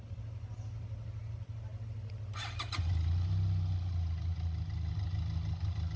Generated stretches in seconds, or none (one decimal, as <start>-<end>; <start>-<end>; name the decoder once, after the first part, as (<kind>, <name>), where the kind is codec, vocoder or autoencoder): none